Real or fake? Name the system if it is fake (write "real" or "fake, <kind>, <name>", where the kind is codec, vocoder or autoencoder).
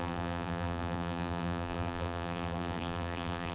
fake, vocoder, BigVGAN v2